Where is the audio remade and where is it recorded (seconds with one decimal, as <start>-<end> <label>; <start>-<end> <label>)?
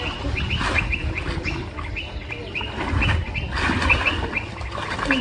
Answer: 0.0-5.2 recorded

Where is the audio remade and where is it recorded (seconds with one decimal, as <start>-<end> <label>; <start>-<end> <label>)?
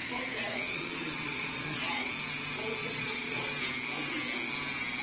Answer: 0.0-2.1 remade; 2.1-2.8 recorded; 2.8-3.5 remade; 3.5-5.0 recorded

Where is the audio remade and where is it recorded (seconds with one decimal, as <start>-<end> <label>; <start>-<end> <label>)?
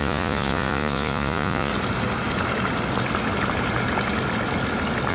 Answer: 0.0-1.7 remade; 1.7-5.1 recorded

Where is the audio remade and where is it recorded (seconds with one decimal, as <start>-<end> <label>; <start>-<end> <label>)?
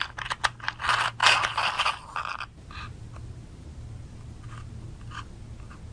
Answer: 0.0-5.9 recorded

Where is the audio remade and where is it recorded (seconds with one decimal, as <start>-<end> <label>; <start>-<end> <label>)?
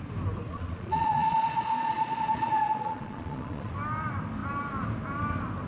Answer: 0.0-0.5 recorded; 0.5-3.7 remade; 3.7-5.7 recorded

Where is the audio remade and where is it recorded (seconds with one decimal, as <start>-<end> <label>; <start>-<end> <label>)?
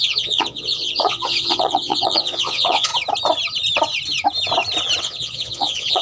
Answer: 0.0-2.9 remade; 2.9-5.0 recorded; 5.0-6.0 remade